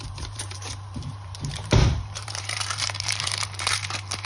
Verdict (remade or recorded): remade